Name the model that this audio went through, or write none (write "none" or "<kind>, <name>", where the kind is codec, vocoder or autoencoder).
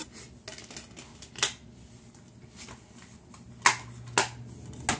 none